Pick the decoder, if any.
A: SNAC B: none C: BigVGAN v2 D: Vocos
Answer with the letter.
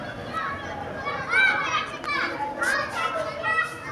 B